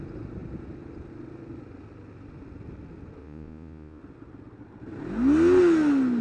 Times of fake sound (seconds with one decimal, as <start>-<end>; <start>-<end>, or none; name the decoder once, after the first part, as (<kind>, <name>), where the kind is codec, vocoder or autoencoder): 3.2-4.0 (vocoder, Vocos)